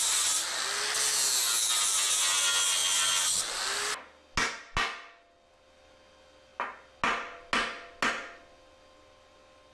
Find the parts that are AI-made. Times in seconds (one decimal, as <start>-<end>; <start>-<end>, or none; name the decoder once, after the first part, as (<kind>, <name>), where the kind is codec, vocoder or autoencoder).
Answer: none